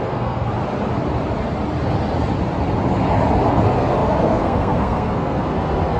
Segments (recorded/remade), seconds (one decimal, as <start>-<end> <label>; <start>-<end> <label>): 0.0-0.5 remade; 0.5-3.5 recorded; 3.5-6.0 remade